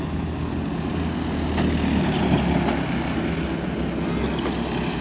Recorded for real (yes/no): yes